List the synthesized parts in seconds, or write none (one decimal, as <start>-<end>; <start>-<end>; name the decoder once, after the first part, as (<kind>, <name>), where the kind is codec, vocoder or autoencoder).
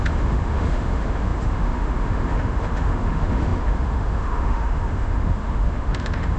0.0-6.4 (autoencoder, DAC-VAE)